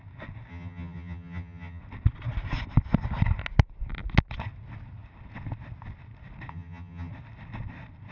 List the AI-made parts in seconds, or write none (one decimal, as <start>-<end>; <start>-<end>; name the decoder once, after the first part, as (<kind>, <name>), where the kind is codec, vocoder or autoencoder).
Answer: 0.5-1.8 (vocoder, HiFi-GAN); 6.5-7.1